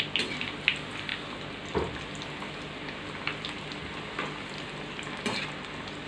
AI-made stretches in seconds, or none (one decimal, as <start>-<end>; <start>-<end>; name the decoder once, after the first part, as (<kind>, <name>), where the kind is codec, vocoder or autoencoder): none